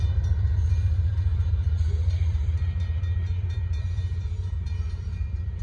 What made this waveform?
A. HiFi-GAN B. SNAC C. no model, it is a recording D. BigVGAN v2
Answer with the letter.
D